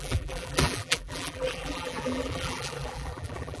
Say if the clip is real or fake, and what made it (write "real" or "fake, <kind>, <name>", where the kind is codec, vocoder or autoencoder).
fake, vocoder, BigVGAN v2